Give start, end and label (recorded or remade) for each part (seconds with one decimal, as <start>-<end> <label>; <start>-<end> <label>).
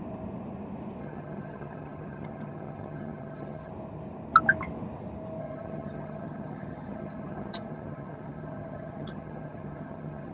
0.0-1.0 recorded; 1.0-3.7 remade; 3.7-5.4 recorded; 5.4-10.3 remade